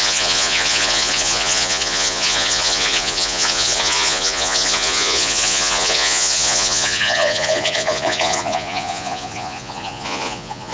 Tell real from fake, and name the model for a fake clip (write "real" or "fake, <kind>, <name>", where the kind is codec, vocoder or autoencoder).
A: fake, vocoder, Vocos